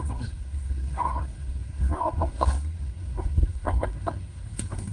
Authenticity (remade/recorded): remade